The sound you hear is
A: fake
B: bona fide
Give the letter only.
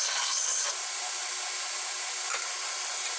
B